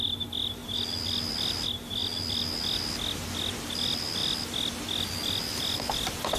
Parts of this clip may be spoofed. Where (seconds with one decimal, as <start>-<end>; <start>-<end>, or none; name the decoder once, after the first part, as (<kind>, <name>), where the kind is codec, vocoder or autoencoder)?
none